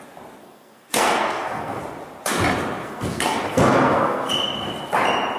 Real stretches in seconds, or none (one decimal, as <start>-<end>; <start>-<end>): 0.0-0.4; 1.8-2.8; 4.3-5.4